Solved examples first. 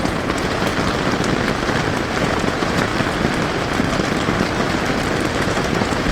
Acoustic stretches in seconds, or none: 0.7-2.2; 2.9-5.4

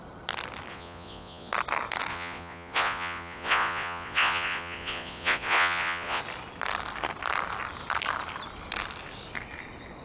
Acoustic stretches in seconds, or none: 0.0-0.7; 1.5-2.1; 6.2-10.0

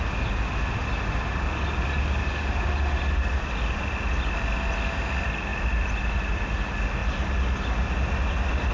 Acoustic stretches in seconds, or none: 0.0-8.7

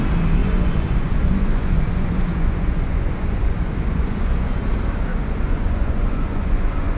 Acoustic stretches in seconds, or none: 0.0-0.4; 4.6-5.1

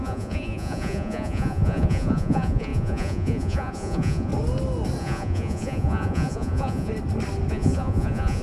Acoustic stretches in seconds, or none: 4.3-5.0; 6.9-7.5

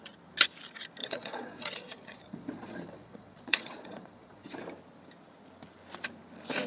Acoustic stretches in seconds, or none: 0.0-1.0; 4.6-6.7

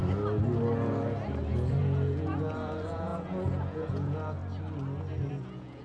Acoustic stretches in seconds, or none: 0.0-1.8; 4.4-5.3